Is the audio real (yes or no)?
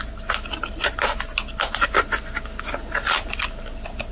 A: yes